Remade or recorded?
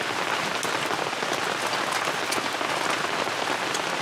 recorded